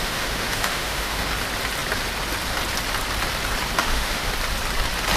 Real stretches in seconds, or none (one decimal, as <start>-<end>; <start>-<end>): 1.3-3.8; 4.3-5.2